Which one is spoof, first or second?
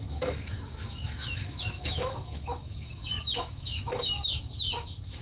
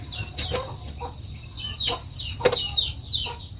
first